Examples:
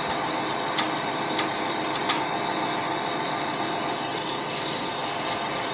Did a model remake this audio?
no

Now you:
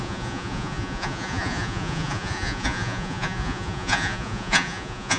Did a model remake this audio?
yes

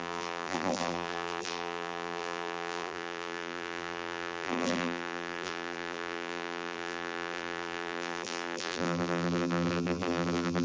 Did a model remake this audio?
yes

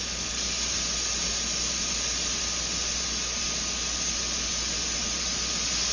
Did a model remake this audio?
no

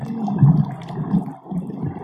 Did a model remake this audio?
no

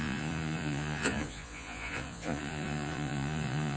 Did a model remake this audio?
yes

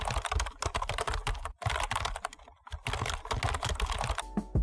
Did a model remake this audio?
no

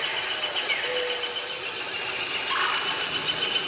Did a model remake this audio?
no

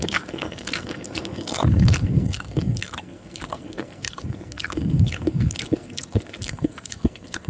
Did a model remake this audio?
yes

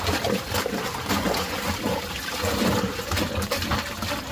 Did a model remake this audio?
no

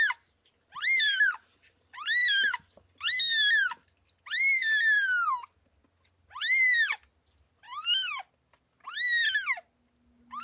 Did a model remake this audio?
no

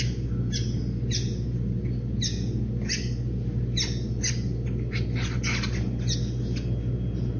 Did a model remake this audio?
no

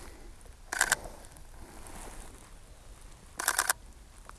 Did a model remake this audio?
no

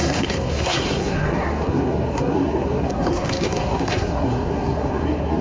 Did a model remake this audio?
yes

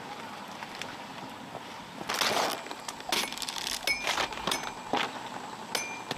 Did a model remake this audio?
no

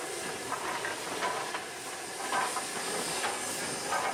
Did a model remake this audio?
no